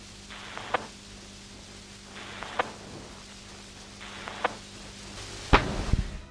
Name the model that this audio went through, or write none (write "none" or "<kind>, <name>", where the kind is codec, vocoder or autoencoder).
none